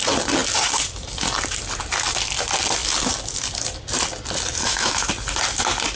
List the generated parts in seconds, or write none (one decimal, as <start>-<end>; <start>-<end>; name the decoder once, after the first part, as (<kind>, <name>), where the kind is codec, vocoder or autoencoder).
4.6-5.1 (autoencoder, DAC-VAE)